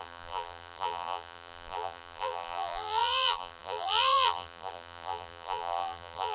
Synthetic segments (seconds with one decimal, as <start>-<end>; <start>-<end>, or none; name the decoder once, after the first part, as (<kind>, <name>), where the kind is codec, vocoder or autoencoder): 0.0-6.3 (vocoder, BigVGAN v2)